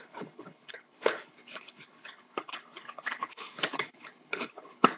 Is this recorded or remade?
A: remade